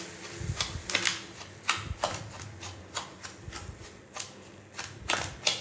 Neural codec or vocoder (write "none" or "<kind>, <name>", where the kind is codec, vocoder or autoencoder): none